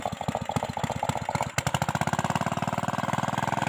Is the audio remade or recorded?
recorded